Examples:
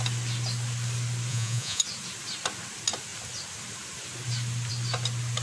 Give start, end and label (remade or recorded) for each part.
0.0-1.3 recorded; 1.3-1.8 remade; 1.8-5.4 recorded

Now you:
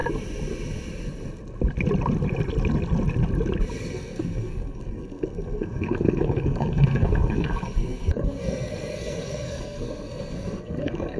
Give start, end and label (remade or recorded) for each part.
0.0-3.9 recorded; 3.9-11.2 remade

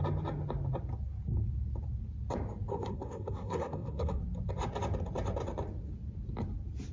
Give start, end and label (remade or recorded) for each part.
0.0-2.7 recorded; 2.7-4.2 remade; 4.2-6.9 recorded

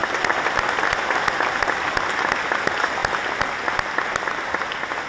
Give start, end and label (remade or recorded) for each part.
0.0-5.1 recorded

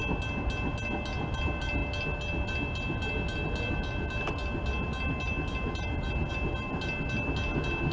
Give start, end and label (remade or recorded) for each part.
0.0-7.9 recorded

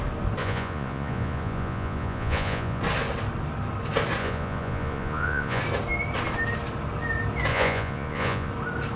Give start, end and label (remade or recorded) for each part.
0.0-0.4 recorded; 0.4-2.8 remade; 2.8-4.2 recorded; 4.2-5.6 remade; 5.6-7.5 recorded; 7.5-8.5 remade; 8.5-9.0 recorded

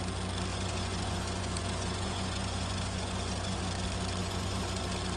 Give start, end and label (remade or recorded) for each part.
0.0-0.5 recorded; 0.5-3.6 remade; 3.6-4.2 recorded; 4.2-4.8 remade; 4.8-5.2 recorded